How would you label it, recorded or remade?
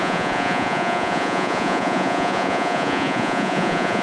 remade